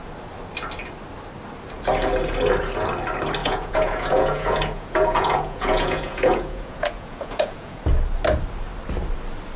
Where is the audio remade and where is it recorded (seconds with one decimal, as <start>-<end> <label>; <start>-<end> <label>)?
0.0-3.4 recorded; 3.4-7.8 remade; 7.8-9.6 recorded